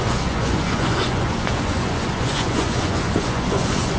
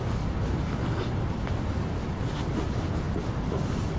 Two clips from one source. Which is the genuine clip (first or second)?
second